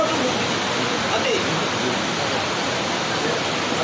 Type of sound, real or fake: real